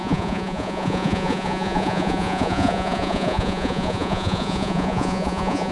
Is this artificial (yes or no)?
yes